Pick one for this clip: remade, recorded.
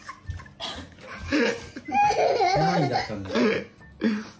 recorded